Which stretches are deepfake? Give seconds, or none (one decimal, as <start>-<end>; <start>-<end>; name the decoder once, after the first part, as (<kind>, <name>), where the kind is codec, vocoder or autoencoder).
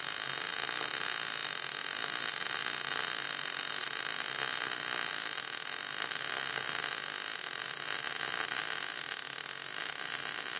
none